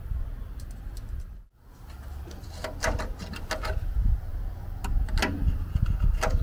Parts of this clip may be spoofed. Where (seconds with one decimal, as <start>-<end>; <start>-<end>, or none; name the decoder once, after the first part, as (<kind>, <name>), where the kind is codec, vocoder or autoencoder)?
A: none